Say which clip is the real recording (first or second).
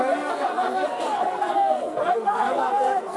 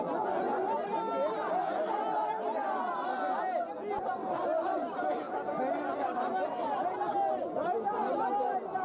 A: second